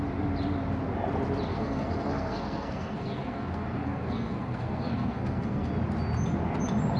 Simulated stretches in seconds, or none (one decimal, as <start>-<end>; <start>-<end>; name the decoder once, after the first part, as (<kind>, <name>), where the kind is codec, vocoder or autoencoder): 1.5-5.7 (codec, SNAC)